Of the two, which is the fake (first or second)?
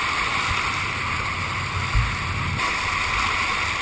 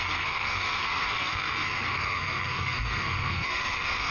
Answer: second